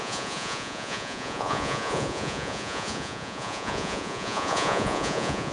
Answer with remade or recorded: remade